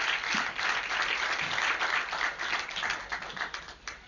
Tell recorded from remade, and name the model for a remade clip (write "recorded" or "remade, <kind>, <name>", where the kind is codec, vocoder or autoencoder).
recorded